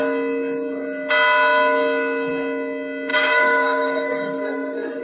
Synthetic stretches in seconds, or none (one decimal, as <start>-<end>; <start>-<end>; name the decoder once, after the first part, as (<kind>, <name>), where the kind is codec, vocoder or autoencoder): 3.1-5.0 (codec, SNAC)